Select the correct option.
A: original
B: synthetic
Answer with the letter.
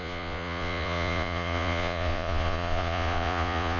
B